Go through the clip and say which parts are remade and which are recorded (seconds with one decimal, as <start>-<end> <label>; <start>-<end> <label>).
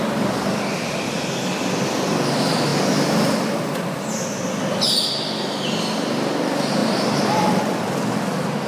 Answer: 0.0-6.8 recorded; 6.8-7.6 remade; 7.6-8.7 recorded